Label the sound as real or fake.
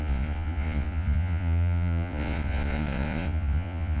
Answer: fake